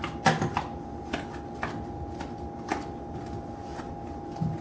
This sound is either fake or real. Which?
real